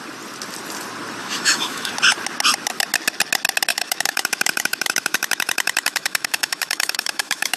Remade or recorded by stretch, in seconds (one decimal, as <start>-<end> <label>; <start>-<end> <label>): 0.0-1.2 recorded; 1.2-1.9 remade; 1.9-3.7 recorded; 3.7-7.6 remade